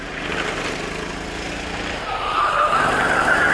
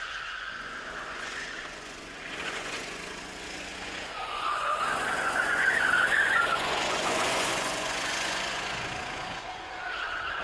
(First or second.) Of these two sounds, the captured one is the first